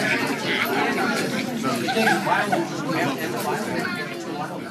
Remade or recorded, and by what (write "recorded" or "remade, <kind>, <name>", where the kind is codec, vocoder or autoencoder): recorded